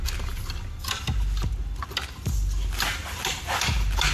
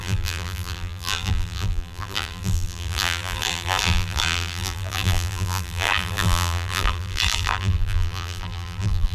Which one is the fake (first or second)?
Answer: second